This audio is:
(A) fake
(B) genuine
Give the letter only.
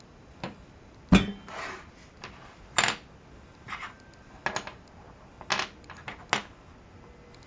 B